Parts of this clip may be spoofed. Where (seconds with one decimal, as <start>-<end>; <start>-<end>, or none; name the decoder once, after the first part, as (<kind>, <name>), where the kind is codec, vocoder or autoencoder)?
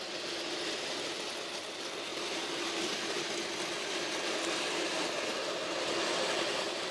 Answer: none